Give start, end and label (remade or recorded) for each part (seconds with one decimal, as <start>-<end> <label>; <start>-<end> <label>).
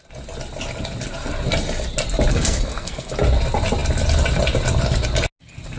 0.0-2.3 recorded; 2.3-3.1 remade; 3.1-5.8 recorded